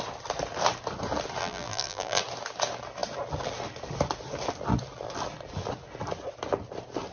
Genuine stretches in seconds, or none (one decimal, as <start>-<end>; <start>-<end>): 0.0-1.4; 2.2-7.1